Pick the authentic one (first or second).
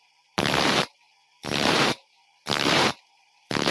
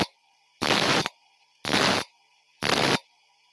second